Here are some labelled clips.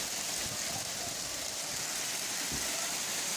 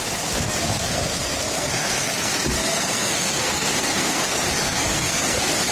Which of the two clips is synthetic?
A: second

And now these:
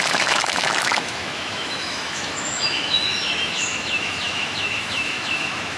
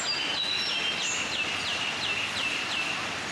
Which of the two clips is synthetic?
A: first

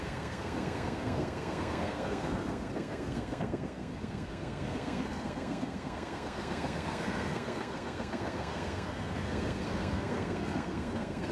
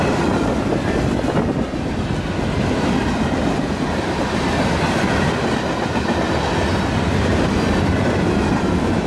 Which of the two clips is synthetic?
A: first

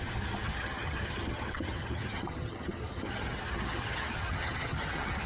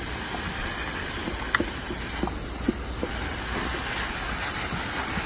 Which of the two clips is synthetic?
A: first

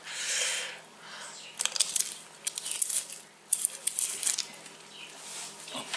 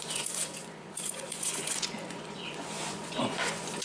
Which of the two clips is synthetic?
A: second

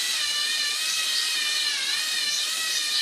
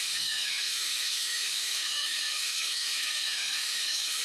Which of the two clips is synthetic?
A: second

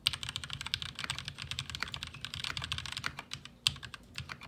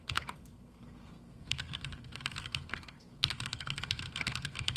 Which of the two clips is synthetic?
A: second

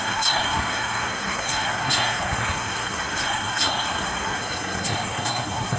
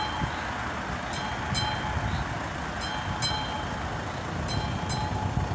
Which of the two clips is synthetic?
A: first